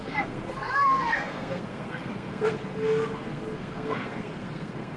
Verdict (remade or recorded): remade